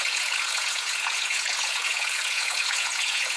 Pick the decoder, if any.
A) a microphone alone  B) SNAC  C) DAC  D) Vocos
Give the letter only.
D